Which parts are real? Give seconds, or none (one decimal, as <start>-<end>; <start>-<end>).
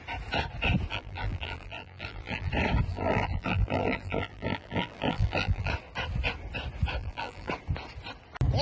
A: 0.0-0.9; 2.5-2.9; 5.7-7.0; 7.5-8.6